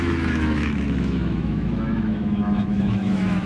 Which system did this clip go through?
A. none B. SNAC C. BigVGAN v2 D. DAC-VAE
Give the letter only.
D